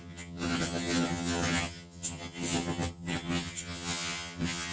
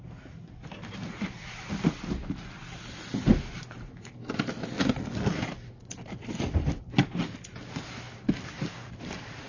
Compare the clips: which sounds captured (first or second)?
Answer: second